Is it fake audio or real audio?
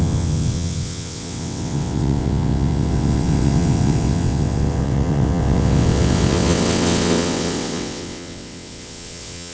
fake